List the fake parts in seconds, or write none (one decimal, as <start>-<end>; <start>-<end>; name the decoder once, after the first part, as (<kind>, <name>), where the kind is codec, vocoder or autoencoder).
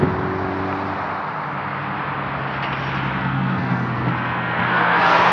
3.2-5.3 (codec, SNAC)